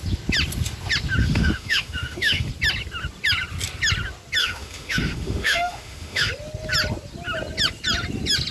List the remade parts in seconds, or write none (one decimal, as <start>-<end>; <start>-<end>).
1.2-2.5; 4.4-6.3